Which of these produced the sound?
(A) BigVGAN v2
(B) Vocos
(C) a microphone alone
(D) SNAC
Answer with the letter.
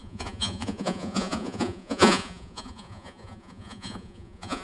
B